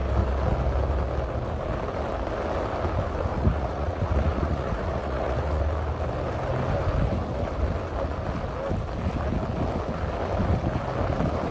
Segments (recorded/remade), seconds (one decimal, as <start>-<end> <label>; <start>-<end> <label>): 0.0-3.3 recorded; 3.3-5.6 remade; 5.6-11.5 recorded